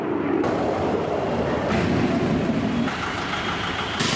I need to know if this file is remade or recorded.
recorded